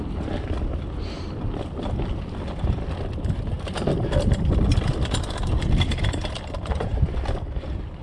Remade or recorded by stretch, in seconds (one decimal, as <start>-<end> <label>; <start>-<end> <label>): 0.0-8.0 recorded